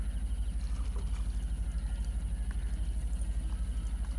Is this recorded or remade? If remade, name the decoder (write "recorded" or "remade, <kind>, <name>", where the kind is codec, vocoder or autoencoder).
recorded